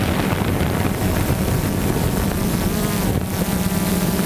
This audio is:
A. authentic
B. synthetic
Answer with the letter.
B